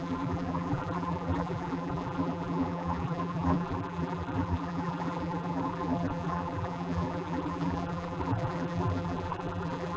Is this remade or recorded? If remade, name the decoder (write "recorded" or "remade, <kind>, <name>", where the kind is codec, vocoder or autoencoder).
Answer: remade, vocoder, BigVGAN v2